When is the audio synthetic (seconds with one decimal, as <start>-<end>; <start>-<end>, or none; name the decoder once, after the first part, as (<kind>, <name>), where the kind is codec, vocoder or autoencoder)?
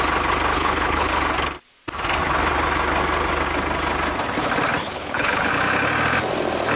0.5-1.2 (codec, HILCodec); 4.8-5.5